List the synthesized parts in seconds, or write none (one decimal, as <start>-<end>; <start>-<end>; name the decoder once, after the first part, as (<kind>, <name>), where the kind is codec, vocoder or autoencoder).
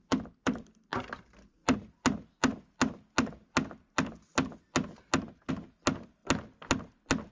none